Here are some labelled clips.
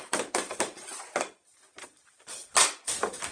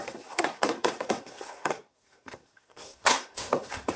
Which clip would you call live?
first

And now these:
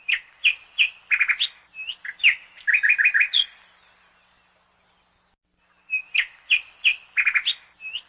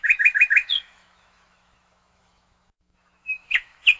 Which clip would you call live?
first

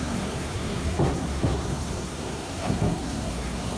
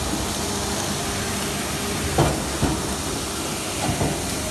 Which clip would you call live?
second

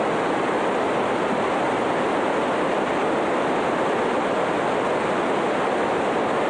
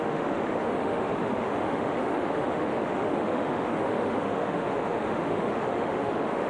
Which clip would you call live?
first